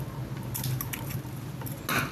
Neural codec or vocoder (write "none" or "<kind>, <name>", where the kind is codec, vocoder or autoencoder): none